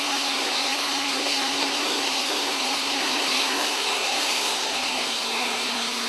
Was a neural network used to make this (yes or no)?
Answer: yes